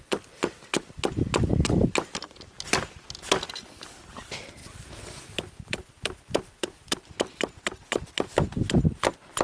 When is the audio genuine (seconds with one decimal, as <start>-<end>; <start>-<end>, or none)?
0.0-9.4